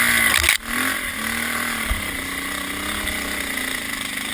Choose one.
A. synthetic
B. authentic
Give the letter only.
B